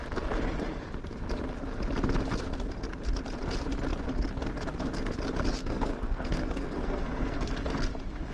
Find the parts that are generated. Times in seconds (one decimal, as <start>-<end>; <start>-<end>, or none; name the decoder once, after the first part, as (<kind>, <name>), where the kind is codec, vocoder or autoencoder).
5.6-7.5 (codec, SNAC)